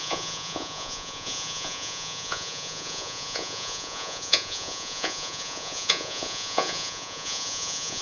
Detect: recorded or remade remade